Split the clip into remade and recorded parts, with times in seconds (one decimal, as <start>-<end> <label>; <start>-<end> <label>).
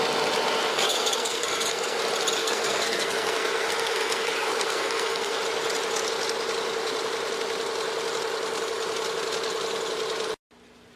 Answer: 0.0-0.7 recorded; 0.7-2.0 remade; 2.0-2.4 recorded; 2.4-5.4 remade; 5.4-11.0 recorded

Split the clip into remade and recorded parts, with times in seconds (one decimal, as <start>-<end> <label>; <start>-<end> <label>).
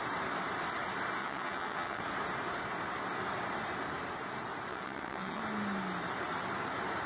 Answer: 0.0-1.2 recorded; 1.2-2.0 remade; 2.0-4.7 recorded; 4.7-5.4 remade; 5.4-7.1 recorded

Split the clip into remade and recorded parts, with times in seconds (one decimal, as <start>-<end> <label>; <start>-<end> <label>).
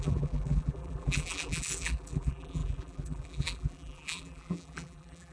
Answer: 0.0-5.3 remade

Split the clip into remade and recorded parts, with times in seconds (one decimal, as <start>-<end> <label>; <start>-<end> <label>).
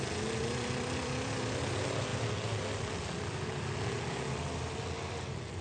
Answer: 0.0-5.6 recorded